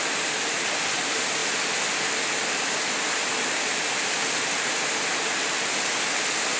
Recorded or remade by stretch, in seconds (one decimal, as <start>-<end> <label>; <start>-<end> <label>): 0.0-6.6 recorded